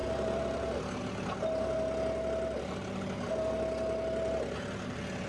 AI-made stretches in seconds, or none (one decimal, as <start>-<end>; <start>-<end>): 0.0-1.0